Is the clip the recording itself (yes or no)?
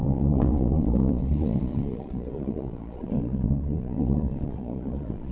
no